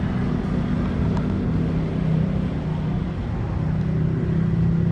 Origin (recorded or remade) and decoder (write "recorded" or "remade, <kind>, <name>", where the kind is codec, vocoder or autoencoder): recorded